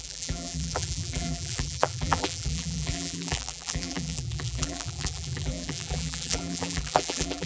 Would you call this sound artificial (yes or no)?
yes